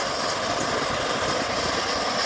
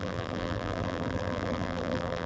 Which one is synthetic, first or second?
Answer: second